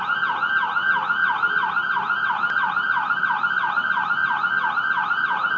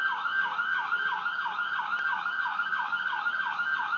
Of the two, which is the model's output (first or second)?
second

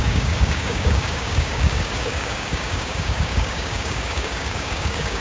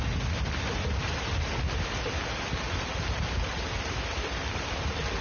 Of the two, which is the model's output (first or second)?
first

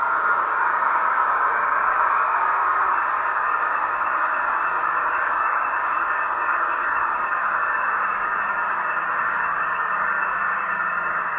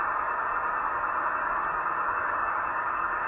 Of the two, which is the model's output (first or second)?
first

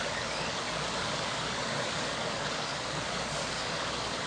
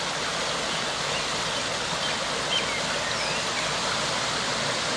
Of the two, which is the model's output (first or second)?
first